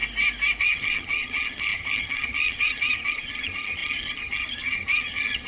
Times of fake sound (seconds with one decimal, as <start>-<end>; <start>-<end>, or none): 0.6-5.5